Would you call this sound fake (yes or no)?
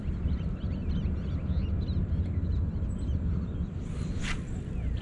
no